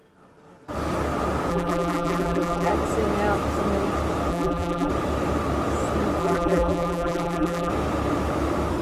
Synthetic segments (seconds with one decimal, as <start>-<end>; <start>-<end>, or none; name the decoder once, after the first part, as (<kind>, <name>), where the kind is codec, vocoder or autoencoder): 1.5-2.7 (vocoder, BigVGAN v2); 4.3-4.9; 6.2-7.7